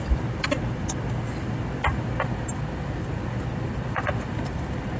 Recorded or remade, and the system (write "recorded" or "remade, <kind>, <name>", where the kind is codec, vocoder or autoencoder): recorded